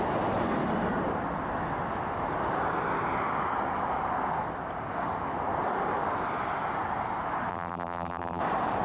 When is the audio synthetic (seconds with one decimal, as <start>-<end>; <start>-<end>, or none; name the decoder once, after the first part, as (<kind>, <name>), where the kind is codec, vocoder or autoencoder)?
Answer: 7.5-8.4 (vocoder, BigVGAN v2)